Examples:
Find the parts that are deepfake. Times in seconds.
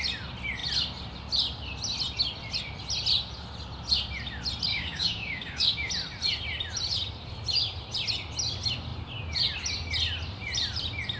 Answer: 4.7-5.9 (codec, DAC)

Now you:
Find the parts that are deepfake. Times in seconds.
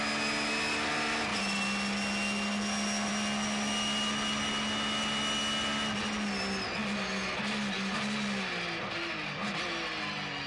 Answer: none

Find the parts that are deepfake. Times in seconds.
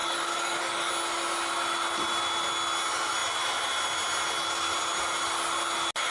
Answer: 0.0-0.9 (codec, DAC)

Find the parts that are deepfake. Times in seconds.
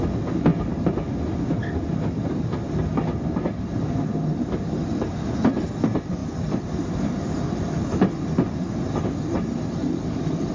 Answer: none